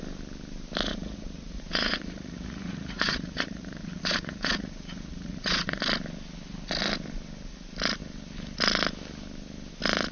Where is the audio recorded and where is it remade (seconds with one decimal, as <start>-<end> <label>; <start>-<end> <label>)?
0.0-0.9 recorded; 0.9-5.8 remade; 5.8-10.1 recorded